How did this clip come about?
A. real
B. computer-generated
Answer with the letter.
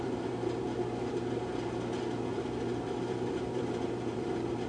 B